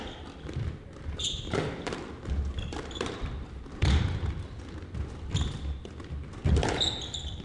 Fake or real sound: fake